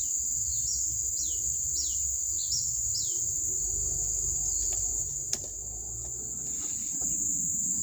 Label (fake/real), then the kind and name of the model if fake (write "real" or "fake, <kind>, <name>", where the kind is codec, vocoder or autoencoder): real